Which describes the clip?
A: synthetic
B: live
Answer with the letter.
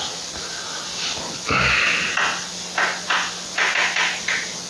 B